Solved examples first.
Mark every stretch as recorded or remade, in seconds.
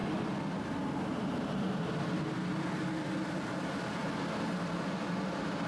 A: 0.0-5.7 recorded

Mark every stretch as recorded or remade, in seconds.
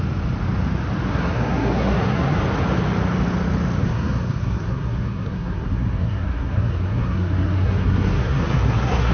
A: 0.0-1.1 recorded; 1.1-2.4 remade; 2.4-3.8 recorded; 3.8-9.1 remade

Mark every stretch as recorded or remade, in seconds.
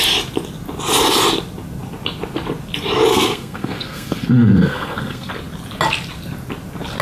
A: 0.0-3.1 recorded; 3.1-5.3 remade; 5.3-7.0 recorded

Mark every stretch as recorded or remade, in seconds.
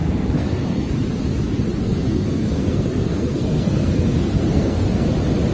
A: 0.0-0.9 remade; 0.9-1.8 recorded; 1.8-5.1 remade; 5.1-5.5 recorded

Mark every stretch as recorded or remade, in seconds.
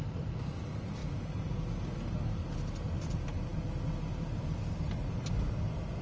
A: 0.0-6.0 recorded